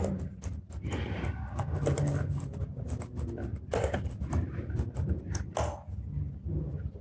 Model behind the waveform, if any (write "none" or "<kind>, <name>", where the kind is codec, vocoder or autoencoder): none